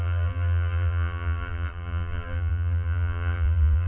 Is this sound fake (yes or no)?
yes